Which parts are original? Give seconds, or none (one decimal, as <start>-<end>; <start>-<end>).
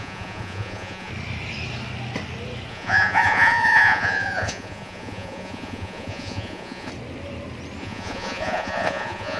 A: 1.1-2.7; 6.9-7.8